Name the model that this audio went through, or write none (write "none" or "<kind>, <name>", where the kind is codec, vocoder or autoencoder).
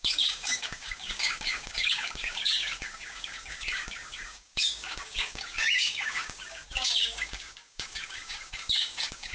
codec, DAC